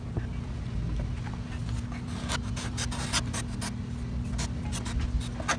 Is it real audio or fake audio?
real